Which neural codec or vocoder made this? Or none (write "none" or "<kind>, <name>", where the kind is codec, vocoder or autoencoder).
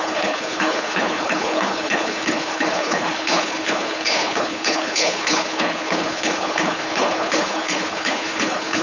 codec, HILCodec